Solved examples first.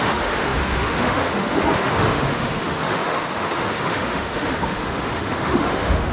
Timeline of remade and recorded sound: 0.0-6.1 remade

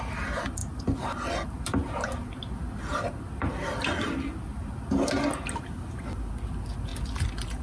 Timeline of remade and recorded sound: 0.0-7.6 recorded

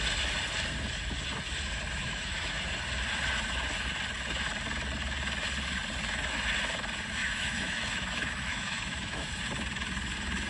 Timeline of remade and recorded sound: 0.0-2.0 recorded; 2.0-2.6 remade; 2.6-7.2 recorded; 7.2-9.3 remade; 9.3-10.5 recorded